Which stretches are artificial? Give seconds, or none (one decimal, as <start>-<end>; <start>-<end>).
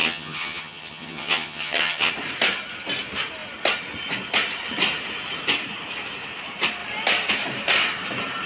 0.0-2.1